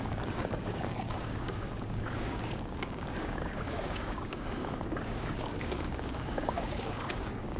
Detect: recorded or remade remade